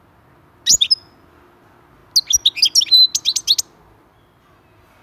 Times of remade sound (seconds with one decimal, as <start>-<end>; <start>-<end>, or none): none